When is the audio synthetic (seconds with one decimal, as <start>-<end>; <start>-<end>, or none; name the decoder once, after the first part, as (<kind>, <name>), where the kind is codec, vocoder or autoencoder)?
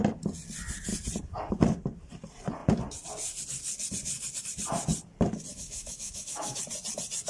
5.5-6.6 (autoencoder, DAC-VAE)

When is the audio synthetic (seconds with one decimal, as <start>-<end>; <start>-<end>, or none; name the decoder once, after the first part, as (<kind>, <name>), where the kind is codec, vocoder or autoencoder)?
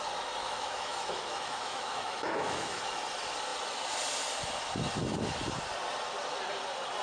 0.4-2.8 (autoencoder, DAC-VAE)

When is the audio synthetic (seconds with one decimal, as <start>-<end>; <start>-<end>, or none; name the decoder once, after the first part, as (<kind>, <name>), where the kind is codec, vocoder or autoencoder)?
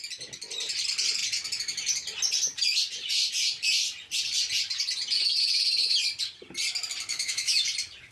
7.1-7.6 (autoencoder, DAC-VAE)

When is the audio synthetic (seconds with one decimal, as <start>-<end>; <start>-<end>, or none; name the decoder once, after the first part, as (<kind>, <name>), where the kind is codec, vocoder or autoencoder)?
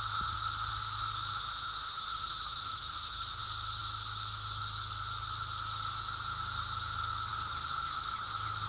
1.3-3.4 (autoencoder, DAC-VAE)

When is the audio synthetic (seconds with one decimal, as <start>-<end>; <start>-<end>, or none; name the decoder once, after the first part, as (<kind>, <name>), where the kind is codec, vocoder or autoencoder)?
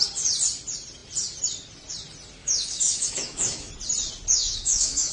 2.4-3.7 (autoencoder, DAC-VAE); 4.3-5.1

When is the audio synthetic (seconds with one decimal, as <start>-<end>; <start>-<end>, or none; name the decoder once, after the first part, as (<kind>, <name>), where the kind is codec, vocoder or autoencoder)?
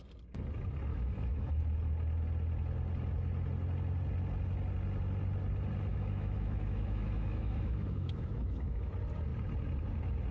0.9-1.6 (autoencoder, DAC-VAE); 5.9-8.9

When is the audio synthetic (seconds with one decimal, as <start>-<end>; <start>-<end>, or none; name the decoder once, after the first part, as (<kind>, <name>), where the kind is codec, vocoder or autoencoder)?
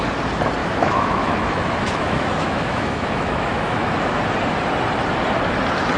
0.6-4.2 (autoencoder, DAC-VAE)